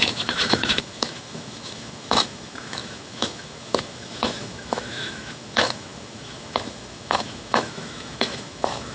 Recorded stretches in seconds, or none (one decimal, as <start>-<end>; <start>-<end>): none